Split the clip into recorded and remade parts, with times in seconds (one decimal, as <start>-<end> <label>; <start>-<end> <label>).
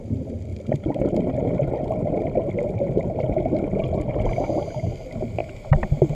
0.0-0.5 recorded; 0.5-4.2 remade; 4.2-6.1 recorded